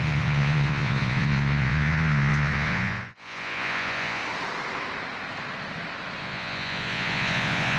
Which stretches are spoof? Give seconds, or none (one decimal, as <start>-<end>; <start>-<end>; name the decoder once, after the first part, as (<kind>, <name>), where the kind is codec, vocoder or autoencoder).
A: 0.0-4.2 (vocoder, Vocos); 6.2-7.8

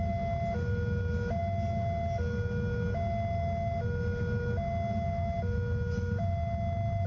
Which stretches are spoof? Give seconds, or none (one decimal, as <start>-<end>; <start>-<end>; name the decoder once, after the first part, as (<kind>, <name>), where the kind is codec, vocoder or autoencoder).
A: none

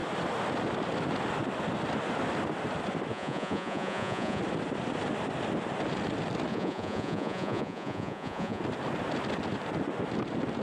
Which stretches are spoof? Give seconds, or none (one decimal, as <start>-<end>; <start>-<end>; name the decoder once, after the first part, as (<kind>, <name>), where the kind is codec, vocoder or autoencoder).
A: 3.1-4.4 (vocoder, Vocos); 6.5-8.6